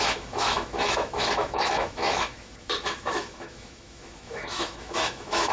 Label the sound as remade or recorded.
remade